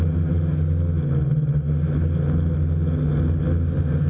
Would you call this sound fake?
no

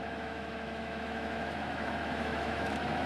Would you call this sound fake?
yes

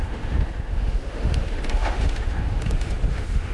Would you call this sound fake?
yes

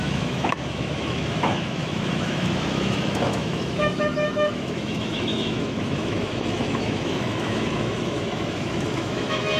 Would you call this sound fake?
yes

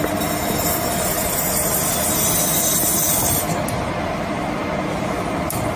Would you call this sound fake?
no